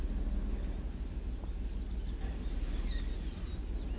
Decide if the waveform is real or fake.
real